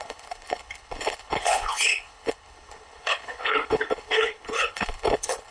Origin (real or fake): fake